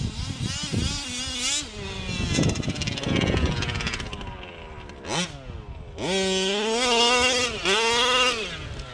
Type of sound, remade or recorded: recorded